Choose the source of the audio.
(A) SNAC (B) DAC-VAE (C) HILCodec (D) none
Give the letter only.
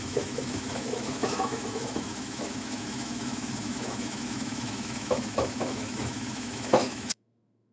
B